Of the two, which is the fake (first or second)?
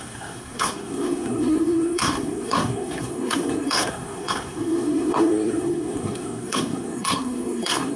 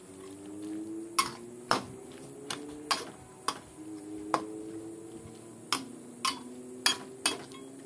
first